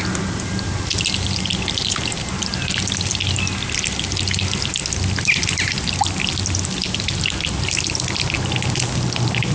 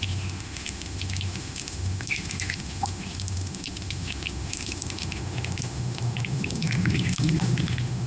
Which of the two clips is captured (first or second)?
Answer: first